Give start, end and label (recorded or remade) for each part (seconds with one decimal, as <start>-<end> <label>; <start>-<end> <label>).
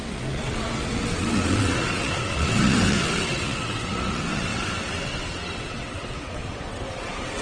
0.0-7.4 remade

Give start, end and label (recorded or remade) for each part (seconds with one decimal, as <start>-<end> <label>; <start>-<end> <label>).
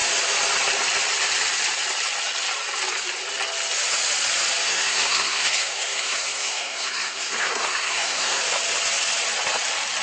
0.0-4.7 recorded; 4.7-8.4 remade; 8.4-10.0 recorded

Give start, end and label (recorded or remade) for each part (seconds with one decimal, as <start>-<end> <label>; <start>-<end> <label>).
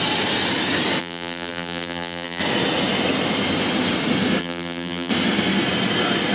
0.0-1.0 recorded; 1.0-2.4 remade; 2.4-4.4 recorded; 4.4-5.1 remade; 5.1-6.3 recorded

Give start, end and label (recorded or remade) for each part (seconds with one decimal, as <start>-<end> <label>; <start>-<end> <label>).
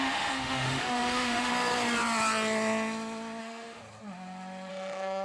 0.0-1.5 remade; 1.5-3.4 recorded; 3.4-3.8 remade; 3.8-4.7 recorded; 4.7-5.2 remade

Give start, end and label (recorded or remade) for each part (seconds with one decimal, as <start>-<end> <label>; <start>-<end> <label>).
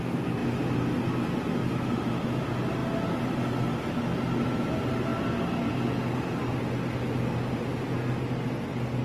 0.0-1.6 recorded; 1.6-2.4 remade; 2.4-9.0 recorded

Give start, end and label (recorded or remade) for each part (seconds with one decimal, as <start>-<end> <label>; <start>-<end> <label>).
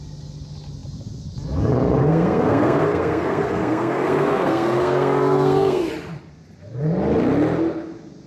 0.0-2.0 recorded; 2.0-5.9 remade; 5.9-8.3 recorded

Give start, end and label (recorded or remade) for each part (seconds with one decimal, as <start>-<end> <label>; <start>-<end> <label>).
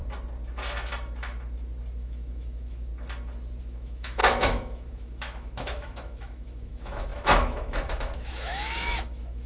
0.0-2.0 recorded; 2.0-2.9 remade; 2.9-3.6 recorded; 3.6-9.5 remade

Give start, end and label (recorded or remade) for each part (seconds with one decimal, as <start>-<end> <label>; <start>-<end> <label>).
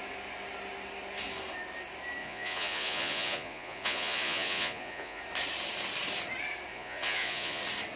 0.0-2.2 recorded; 2.2-5.2 remade; 5.2-6.7 recorded; 6.7-7.6 remade; 7.6-8.0 recorded